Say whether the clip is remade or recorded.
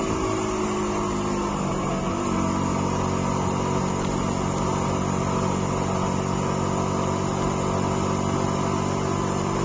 recorded